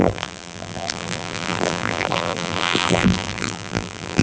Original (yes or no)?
no